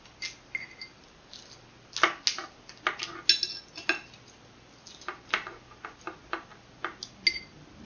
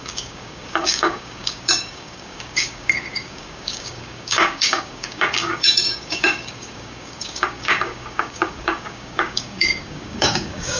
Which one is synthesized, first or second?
second